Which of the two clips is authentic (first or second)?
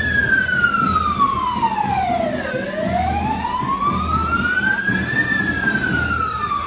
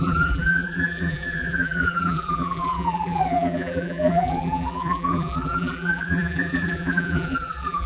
first